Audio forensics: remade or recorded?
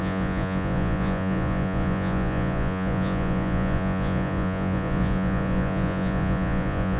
remade